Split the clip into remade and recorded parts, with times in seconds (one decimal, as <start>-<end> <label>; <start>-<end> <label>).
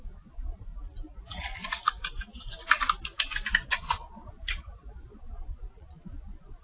0.0-0.7 remade; 0.7-3.7 recorded; 3.7-6.6 remade